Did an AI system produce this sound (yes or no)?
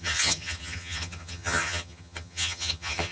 yes